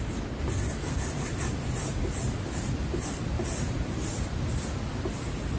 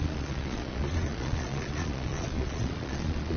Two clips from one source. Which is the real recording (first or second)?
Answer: first